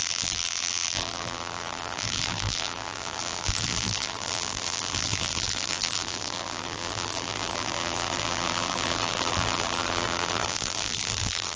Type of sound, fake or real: fake